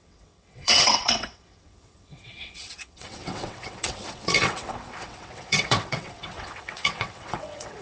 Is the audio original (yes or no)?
no